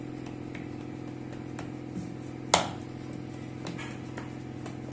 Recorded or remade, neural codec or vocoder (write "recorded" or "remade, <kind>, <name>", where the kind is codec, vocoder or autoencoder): recorded